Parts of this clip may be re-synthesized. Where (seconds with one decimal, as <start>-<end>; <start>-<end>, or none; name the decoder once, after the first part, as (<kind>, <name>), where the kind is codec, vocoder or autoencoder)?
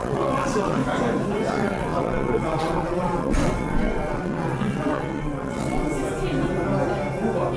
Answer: 0.0-0.8 (vocoder, WaveNeXt); 1.5-5.9